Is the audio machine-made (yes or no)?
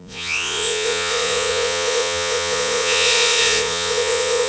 yes